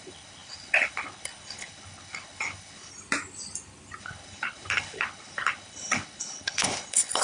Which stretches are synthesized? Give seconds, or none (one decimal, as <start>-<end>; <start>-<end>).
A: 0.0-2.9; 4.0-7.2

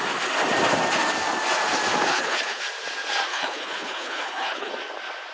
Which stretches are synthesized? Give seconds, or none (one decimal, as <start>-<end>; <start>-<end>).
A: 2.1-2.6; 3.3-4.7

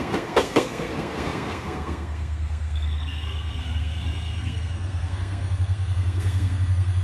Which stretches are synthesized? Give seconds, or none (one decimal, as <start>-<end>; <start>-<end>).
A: 0.0-7.0

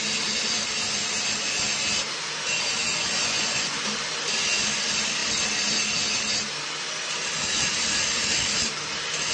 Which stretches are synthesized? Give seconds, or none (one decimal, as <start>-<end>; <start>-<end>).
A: 2.9-3.8

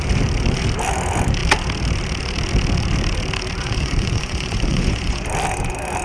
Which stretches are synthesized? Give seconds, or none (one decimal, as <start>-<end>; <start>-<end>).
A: 3.6-5.2

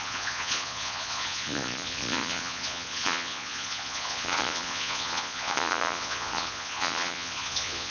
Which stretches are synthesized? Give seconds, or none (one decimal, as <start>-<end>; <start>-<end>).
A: 0.0-7.9

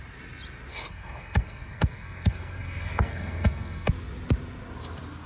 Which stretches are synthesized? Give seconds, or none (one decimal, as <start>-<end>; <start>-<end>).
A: 0.7-3.9